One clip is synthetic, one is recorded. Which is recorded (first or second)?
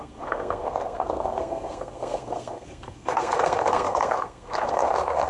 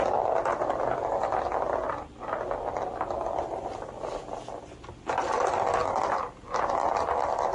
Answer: second